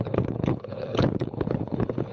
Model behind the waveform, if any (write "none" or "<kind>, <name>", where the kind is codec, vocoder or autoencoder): codec, HILCodec